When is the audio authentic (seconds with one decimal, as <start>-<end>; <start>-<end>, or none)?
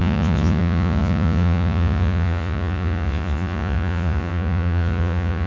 none